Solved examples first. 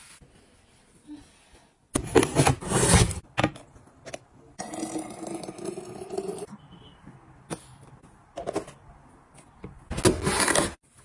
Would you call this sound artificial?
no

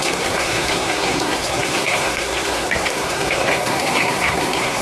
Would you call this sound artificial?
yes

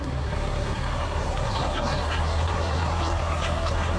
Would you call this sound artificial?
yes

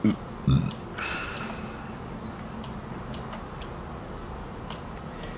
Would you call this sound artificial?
no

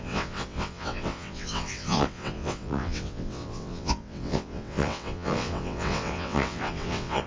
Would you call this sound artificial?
yes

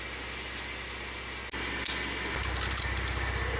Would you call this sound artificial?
no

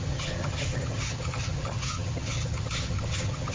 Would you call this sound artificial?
yes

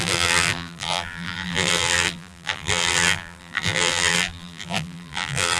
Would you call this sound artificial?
yes